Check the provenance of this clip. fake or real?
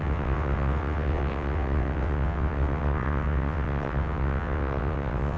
fake